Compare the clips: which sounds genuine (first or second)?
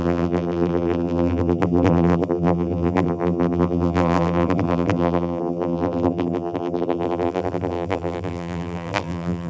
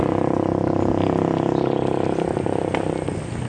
second